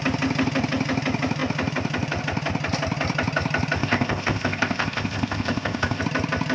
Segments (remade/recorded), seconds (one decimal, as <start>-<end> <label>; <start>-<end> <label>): 0.0-3.8 recorded; 3.8-6.0 remade; 6.0-6.5 recorded